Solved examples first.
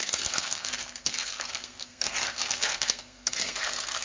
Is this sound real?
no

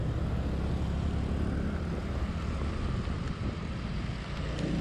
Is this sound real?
yes